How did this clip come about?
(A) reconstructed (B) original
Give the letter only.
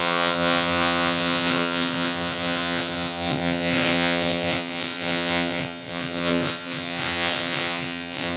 A